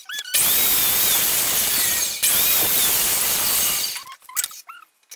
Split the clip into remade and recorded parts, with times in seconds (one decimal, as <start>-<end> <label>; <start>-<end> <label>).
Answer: 0.0-5.2 recorded

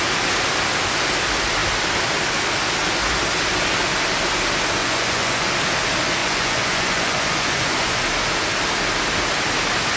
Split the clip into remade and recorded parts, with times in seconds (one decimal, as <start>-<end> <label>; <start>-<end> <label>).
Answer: 0.0-4.8 recorded; 4.8-5.5 remade; 5.5-6.2 recorded; 6.2-8.0 remade; 8.0-10.0 recorded

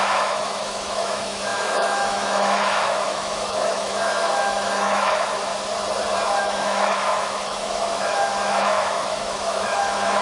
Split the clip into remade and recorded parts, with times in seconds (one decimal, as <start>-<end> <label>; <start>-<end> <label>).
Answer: 0.0-5.5 remade; 5.5-6.4 recorded; 6.4-10.2 remade

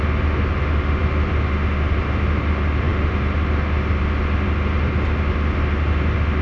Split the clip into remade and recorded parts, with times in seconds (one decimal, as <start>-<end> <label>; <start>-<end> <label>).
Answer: 0.0-6.4 recorded